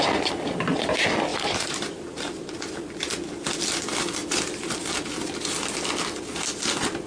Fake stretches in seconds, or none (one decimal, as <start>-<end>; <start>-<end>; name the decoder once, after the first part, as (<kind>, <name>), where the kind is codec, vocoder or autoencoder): 1.3-2.7 (vocoder, BigVGAN v2); 4.2-4.7